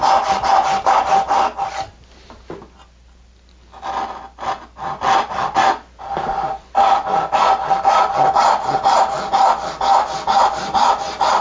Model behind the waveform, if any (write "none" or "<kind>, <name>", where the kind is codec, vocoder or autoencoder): none